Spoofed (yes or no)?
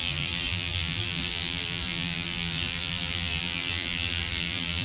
yes